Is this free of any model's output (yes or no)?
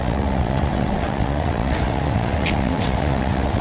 no